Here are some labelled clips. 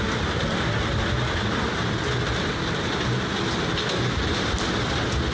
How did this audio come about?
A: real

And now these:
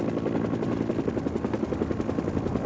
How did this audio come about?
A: real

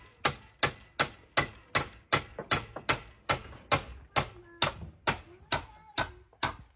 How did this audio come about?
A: real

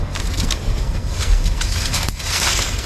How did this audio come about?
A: fake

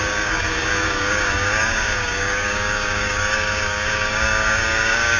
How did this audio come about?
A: fake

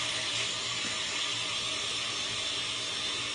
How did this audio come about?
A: real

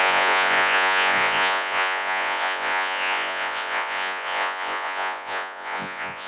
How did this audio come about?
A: fake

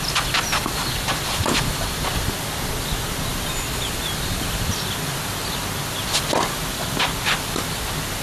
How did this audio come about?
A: real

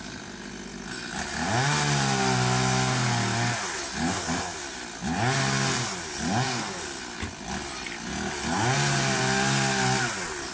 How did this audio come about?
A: real